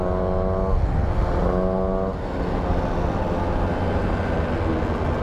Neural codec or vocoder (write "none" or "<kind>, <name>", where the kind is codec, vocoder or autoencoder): none